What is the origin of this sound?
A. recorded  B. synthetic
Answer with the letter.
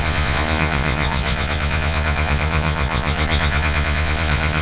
B